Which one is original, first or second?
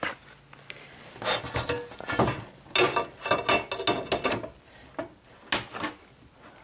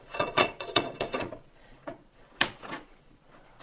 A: first